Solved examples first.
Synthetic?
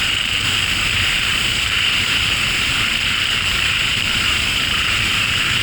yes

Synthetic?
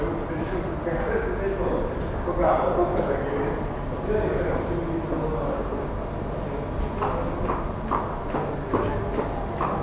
no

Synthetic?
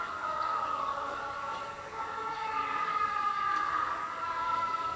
yes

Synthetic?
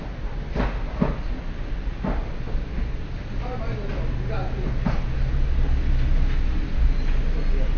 no